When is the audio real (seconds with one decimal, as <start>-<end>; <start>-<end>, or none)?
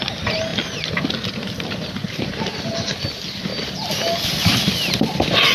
0.0-5.5